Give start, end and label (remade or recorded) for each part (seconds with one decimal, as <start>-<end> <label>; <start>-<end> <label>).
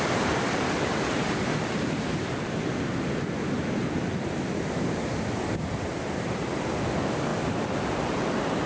0.0-8.7 recorded